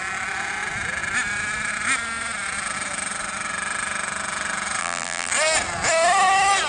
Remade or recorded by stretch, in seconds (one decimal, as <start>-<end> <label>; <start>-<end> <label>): 0.0-4.8 recorded; 4.8-5.3 remade; 5.3-6.7 recorded